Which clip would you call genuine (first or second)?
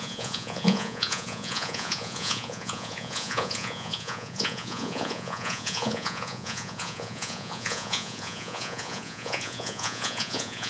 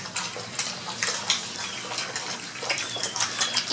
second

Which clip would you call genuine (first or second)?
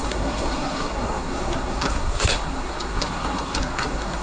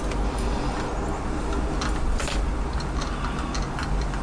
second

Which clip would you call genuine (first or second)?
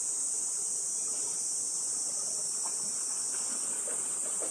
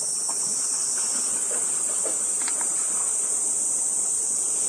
first